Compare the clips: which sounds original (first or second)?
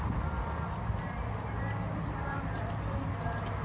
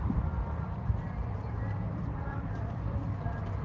first